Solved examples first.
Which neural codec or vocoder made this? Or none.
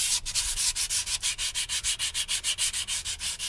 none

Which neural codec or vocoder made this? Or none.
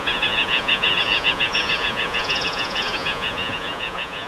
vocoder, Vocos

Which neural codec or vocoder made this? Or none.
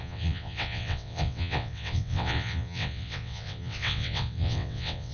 vocoder, WaveNeXt